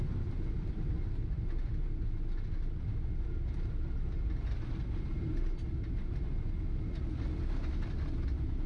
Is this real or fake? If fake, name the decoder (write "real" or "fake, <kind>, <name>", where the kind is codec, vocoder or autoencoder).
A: real